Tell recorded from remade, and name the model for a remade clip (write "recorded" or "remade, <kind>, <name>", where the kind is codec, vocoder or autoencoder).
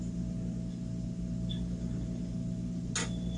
recorded